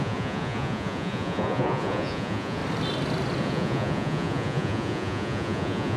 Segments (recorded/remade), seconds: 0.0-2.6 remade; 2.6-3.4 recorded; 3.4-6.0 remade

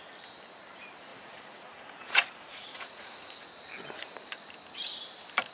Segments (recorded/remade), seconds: 0.0-1.1 recorded; 1.1-3.4 remade; 3.4-5.5 recorded